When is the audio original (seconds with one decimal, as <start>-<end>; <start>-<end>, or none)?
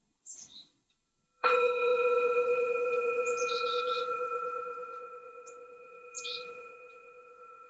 none